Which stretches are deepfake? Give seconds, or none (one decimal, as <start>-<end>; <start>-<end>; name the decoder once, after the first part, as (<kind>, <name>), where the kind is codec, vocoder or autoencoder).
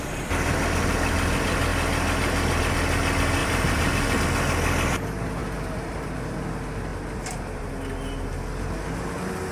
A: 3.4-4.2 (vocoder, BigVGAN v2); 5.4-6.3; 6.9-7.7